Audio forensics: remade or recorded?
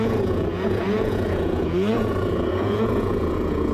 remade